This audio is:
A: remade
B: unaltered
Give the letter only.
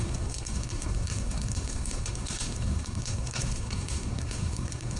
A